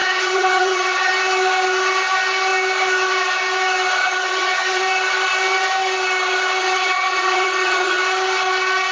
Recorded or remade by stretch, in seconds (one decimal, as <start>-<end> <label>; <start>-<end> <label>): 0.0-1.1 remade; 1.1-4.0 recorded; 4.0-4.8 remade; 4.8-6.6 recorded; 6.6-8.0 remade; 8.0-8.9 recorded